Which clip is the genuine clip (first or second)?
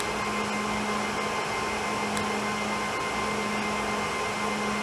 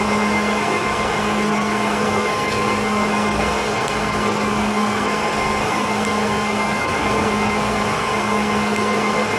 first